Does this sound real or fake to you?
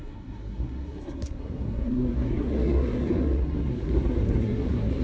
fake